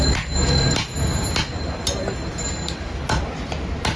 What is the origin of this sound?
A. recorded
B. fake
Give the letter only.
A